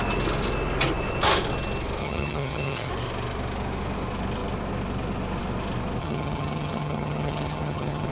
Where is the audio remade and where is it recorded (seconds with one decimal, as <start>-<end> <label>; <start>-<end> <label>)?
0.0-2.0 recorded; 2.0-2.9 remade; 2.9-6.0 recorded; 6.0-8.1 remade